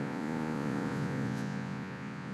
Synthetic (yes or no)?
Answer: yes